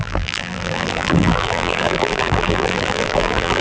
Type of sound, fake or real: fake